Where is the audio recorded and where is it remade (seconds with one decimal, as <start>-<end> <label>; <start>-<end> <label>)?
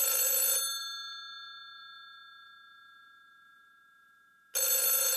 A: 0.0-5.2 recorded